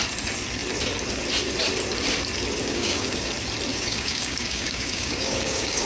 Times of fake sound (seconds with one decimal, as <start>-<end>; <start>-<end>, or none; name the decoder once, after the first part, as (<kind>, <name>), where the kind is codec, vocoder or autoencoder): 2.6-3.3 (codec, DAC); 3.7-5.9